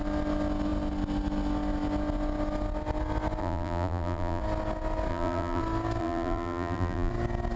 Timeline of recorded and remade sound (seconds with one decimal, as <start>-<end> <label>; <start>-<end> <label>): 0.0-3.4 recorded; 3.4-4.4 remade; 4.4-5.1 recorded; 5.1-5.6 remade; 5.6-6.0 recorded; 6.0-7.1 remade; 7.1-7.6 recorded